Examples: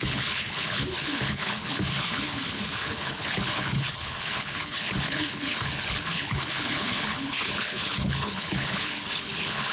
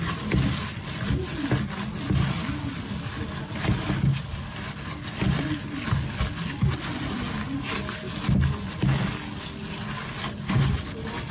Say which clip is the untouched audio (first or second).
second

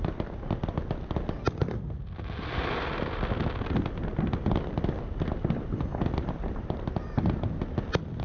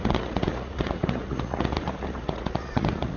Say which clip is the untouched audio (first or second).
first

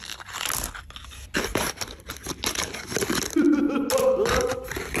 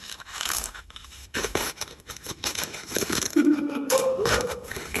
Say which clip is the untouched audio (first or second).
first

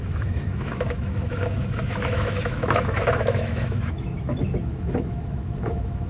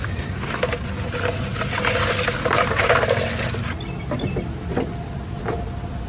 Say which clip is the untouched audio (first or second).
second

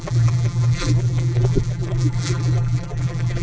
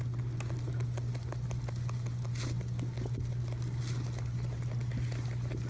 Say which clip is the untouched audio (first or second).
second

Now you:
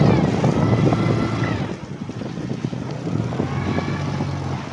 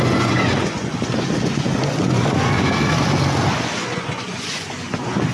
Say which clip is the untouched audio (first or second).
first